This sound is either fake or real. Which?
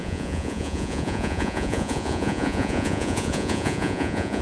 fake